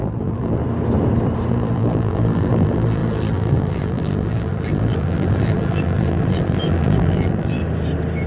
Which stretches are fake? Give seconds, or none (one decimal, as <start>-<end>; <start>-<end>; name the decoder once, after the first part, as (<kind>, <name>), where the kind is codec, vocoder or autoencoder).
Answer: 0.0-0.6 (vocoder, BigVGAN v2); 1.5-7.6